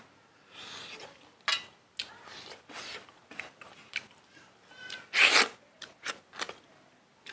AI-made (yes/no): no